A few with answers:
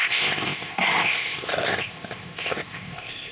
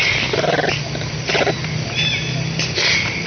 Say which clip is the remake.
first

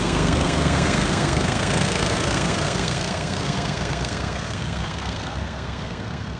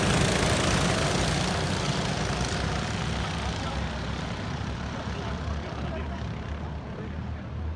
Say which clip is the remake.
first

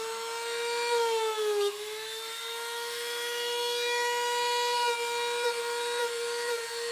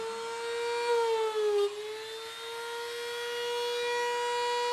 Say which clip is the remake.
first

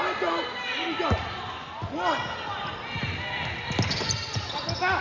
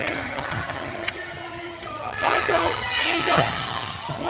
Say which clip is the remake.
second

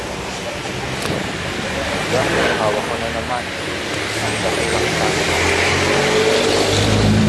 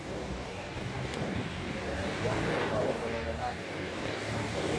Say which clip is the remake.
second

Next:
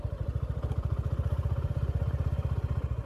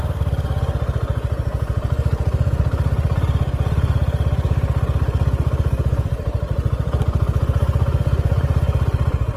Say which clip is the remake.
first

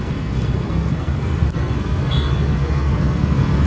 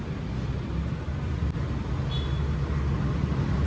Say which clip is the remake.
first